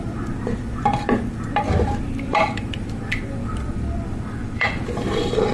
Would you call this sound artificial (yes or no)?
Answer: yes